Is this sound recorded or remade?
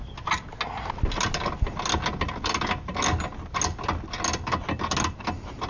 recorded